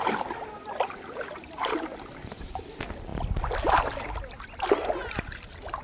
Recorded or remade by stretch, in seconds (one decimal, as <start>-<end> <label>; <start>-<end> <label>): 0.0-5.8 recorded